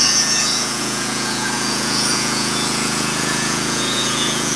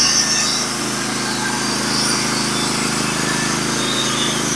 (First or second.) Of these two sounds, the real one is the second